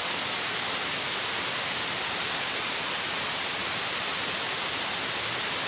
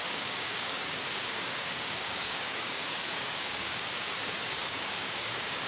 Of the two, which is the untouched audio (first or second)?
first